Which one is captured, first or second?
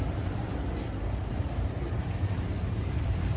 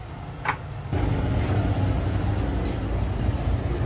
second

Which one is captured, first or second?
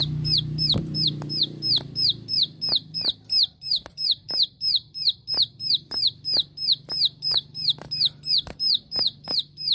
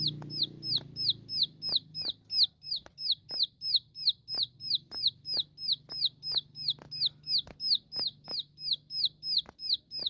second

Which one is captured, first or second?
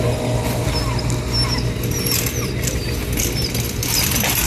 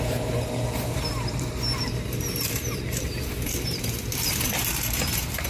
first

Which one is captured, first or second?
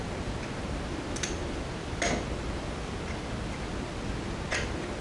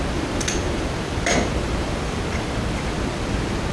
first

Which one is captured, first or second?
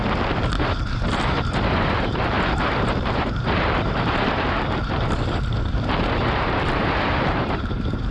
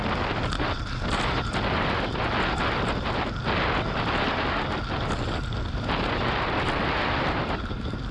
second